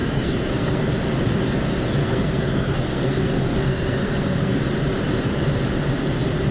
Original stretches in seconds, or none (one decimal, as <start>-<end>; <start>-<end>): 0.9-2.0; 4.6-6.5